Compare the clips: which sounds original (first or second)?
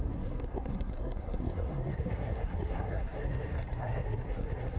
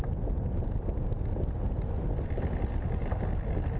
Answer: second